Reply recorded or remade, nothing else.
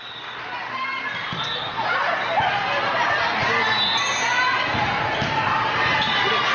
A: recorded